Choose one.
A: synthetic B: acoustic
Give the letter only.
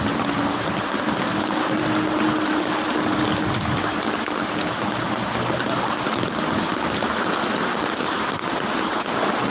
B